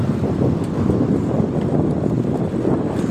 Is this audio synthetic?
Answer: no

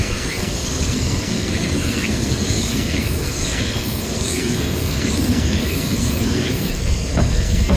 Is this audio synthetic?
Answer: yes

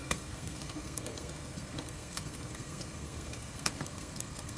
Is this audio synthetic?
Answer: yes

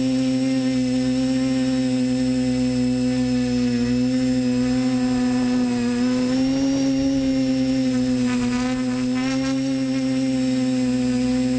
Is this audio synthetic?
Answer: no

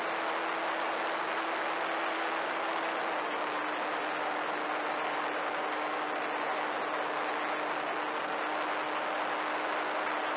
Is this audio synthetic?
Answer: no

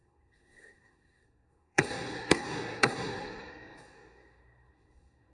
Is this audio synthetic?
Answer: yes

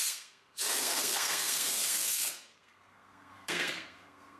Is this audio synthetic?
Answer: yes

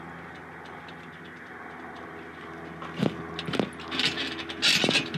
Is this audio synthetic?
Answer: no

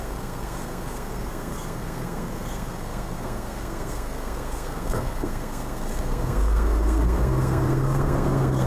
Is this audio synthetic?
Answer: yes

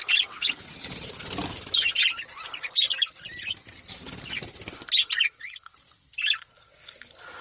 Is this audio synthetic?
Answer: no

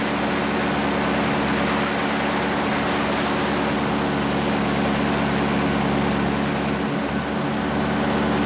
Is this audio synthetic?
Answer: no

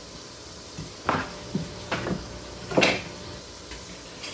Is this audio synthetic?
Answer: no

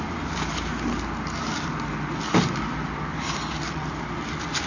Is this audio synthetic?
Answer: no